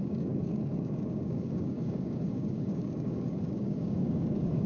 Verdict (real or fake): fake